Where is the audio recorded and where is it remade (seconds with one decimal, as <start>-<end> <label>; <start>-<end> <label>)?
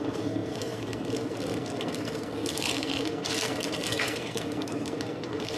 0.0-5.6 remade